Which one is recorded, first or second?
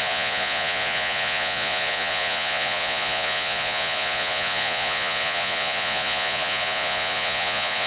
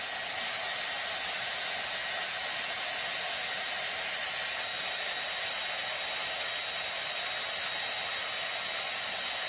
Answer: second